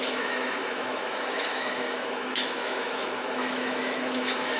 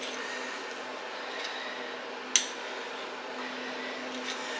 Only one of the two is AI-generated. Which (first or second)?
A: first